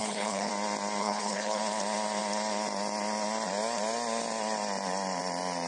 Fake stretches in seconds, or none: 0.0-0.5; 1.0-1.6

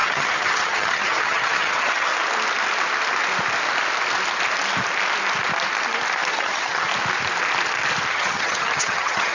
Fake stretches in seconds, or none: 0.0-2.1; 6.3-6.9; 8.1-9.3